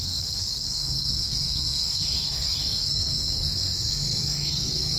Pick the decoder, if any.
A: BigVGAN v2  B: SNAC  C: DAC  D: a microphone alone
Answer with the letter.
B